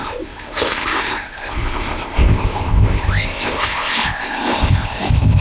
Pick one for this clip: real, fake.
fake